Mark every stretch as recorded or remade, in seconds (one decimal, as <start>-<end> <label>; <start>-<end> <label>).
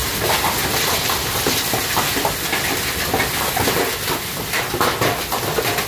0.0-5.9 recorded